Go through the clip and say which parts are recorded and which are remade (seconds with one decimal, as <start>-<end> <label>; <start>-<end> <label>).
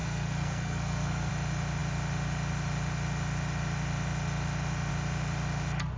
0.0-1.3 remade; 1.3-6.0 recorded